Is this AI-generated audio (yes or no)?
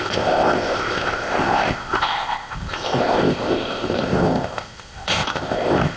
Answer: yes